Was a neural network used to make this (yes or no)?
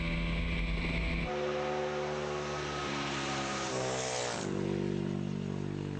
no